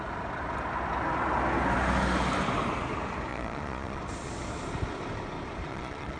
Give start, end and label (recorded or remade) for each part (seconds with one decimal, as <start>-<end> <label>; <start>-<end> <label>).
0.0-3.3 recorded; 3.3-4.0 remade; 4.0-5.7 recorded; 5.7-6.2 remade